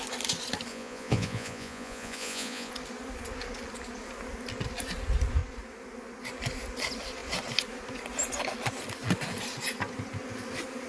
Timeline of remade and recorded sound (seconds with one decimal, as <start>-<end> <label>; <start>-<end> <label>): 0.0-0.7 recorded; 0.7-2.7 remade; 2.7-10.9 recorded